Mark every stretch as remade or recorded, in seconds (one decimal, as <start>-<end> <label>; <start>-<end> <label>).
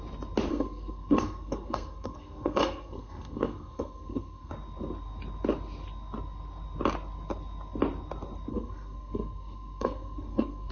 0.0-0.5 recorded; 0.5-4.5 remade; 4.5-8.5 recorded; 8.5-10.7 remade